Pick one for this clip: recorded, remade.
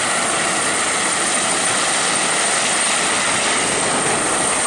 recorded